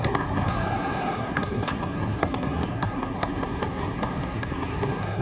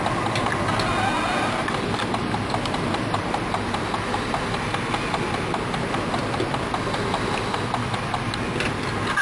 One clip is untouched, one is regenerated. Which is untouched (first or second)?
second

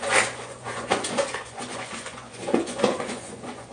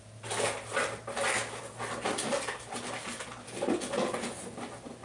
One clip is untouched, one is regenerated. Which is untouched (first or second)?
second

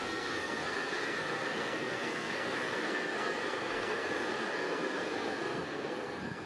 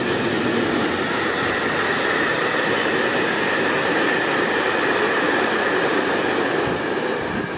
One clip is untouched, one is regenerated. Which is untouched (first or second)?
second